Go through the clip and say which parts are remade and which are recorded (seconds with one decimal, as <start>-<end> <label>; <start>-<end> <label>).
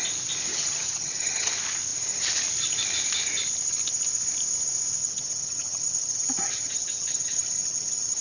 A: 0.0-0.5 recorded; 0.5-1.5 remade; 1.5-5.0 recorded; 5.0-8.2 remade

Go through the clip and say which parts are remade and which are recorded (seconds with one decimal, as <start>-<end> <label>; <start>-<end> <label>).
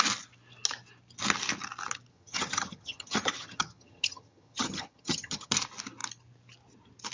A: 0.0-2.1 recorded; 2.1-5.5 remade; 5.5-7.1 recorded